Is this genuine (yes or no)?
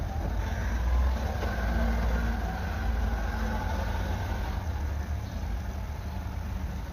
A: yes